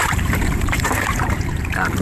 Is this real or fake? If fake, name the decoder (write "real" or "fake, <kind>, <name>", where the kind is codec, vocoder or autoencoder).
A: fake, vocoder, BigVGAN v2